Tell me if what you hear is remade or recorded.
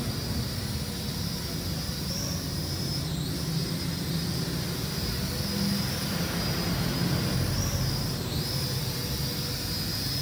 recorded